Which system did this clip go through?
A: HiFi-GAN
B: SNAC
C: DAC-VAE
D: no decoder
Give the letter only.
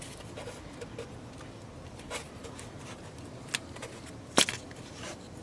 D